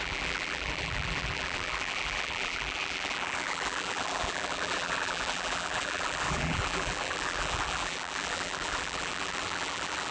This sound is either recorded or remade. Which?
remade